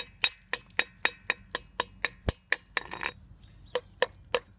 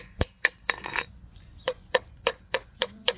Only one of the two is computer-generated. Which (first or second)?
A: second